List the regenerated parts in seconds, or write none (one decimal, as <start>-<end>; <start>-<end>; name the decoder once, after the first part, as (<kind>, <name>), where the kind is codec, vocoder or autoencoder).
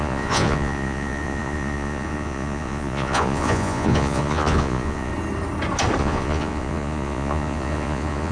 0.0-5.1 (vocoder, Vocos); 6.0-8.3